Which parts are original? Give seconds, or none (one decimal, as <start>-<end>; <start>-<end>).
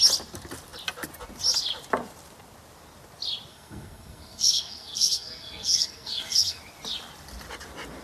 0.0-3.5; 6.6-8.0